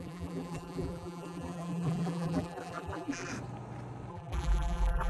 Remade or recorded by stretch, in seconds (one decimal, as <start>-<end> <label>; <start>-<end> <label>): 0.0-3.3 remade; 3.3-4.1 recorded; 4.1-5.1 remade